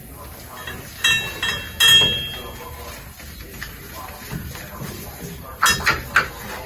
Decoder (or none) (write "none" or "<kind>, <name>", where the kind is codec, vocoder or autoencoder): none